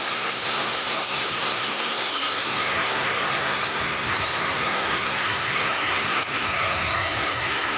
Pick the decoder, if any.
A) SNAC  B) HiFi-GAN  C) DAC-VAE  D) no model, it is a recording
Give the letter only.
A